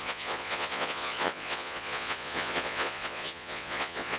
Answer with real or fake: fake